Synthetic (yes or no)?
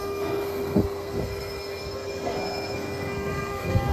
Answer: yes